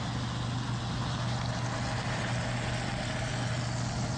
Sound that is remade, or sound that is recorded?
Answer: recorded